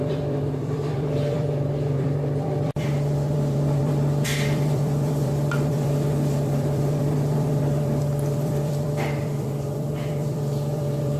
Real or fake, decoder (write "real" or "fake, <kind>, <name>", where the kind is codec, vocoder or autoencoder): fake, vocoder, BigVGAN v2